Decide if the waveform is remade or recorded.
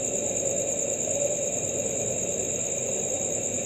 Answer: recorded